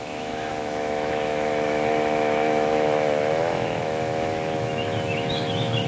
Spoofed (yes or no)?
yes